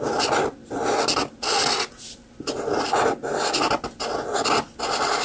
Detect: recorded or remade recorded